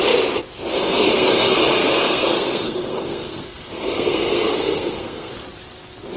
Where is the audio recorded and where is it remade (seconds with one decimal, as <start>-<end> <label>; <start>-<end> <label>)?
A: 0.0-0.7 recorded; 0.7-1.3 remade; 1.3-1.8 recorded; 1.8-5.3 remade; 5.3-6.2 recorded